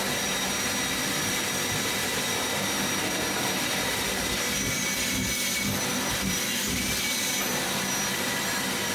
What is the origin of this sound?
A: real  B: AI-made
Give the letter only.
A